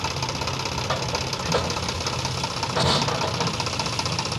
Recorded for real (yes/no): yes